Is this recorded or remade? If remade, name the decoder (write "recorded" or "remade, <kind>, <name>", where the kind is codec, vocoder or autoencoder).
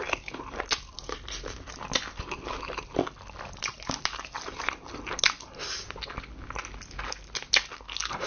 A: recorded